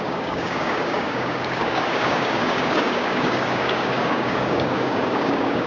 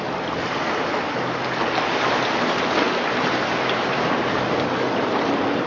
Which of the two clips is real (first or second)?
second